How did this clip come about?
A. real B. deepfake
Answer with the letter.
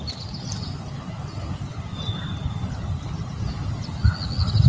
A